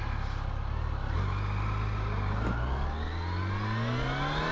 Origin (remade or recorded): recorded